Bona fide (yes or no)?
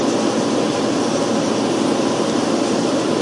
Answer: yes